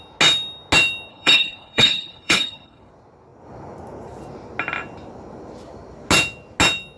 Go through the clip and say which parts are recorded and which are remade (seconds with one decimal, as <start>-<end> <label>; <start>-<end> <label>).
0.0-1.1 recorded; 1.1-2.9 remade; 2.9-7.0 recorded